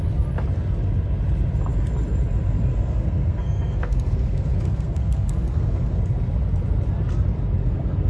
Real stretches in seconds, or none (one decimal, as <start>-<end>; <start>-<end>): 0.0-2.7; 6.0-7.6